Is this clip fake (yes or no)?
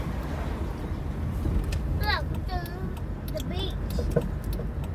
no